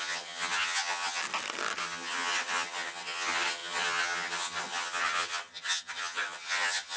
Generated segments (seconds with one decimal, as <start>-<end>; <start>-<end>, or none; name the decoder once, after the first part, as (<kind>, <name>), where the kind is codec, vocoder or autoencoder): 0.0-1.2 (vocoder, HiFi-GAN); 1.8-7.0